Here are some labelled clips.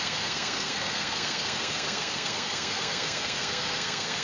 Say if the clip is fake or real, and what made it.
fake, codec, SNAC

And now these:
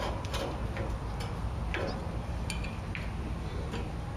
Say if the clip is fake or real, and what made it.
real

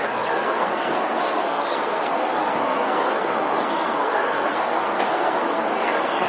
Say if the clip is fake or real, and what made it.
fake, codec, SNAC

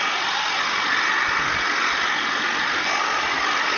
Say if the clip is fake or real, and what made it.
real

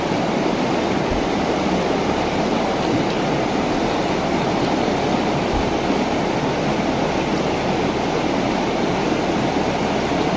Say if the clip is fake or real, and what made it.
real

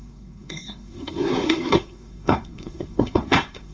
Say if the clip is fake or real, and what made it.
fake, codec, SNAC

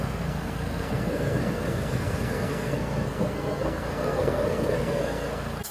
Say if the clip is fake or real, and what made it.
fake, codec, SNAC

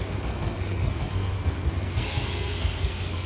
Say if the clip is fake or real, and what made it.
fake, codec, SNAC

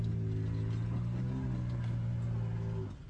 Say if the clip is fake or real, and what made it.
real